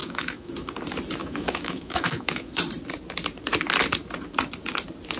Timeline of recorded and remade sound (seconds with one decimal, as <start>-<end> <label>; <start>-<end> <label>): 0.0-0.5 remade; 0.5-1.2 recorded; 1.2-2.5 remade; 2.5-5.2 recorded